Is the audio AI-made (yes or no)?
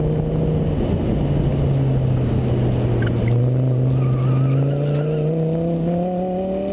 no